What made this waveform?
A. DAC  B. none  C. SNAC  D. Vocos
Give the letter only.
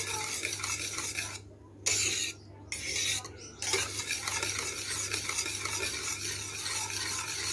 B